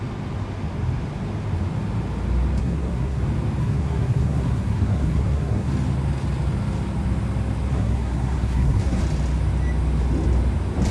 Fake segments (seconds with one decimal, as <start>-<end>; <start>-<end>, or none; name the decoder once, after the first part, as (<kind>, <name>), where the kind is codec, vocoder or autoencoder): 2.6-3.2 (codec, SNAC); 3.6-5.7; 7.7-9.0

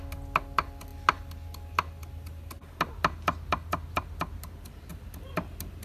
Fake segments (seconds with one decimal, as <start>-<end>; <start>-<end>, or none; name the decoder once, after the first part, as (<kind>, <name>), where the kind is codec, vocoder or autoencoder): 4.9-5.8 (vocoder, BigVGAN v2)

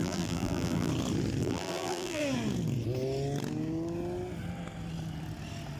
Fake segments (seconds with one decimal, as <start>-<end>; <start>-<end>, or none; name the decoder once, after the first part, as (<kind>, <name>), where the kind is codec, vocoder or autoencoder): 0.0-0.9 (vocoder, BigVGAN v2); 1.4-2.2

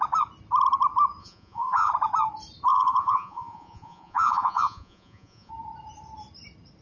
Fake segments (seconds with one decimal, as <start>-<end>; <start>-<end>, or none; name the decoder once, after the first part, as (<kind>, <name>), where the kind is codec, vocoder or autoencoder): 1.2-1.9 (vocoder, Vocos); 2.7-5.5

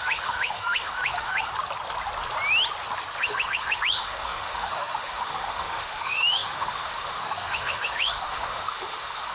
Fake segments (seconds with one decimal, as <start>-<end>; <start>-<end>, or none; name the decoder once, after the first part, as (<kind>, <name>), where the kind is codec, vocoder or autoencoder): 0.0-1.5 (autoencoder, DAC-VAE); 3.2-9.3

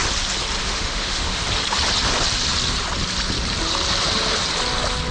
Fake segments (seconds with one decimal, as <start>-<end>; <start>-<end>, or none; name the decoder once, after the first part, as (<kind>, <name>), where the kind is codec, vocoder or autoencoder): 0.6-1.4 (autoencoder, DAC-VAE)

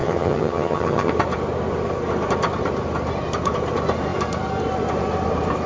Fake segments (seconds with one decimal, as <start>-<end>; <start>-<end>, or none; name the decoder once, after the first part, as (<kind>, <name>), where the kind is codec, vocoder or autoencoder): 0.0-1.1 (vocoder, HiFi-GAN)